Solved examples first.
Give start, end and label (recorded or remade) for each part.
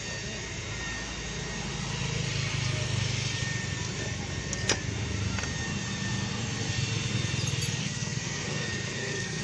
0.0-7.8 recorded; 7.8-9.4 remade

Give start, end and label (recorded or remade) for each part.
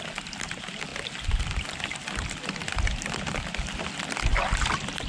0.0-5.1 recorded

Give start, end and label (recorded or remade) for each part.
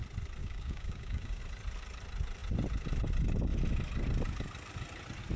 0.0-0.4 recorded; 0.4-1.4 remade; 1.4-5.4 recorded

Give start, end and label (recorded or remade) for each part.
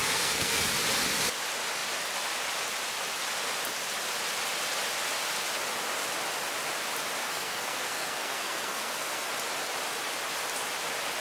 0.0-0.7 remade; 0.7-7.2 recorded; 7.2-9.3 remade; 9.3-11.2 recorded